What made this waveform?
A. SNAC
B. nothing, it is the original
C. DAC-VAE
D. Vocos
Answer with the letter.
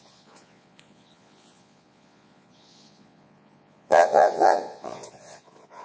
D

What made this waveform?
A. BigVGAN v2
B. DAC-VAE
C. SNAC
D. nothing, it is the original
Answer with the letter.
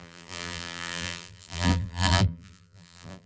A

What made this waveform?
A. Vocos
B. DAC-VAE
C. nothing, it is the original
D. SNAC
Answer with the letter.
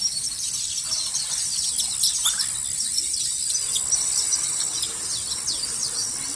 C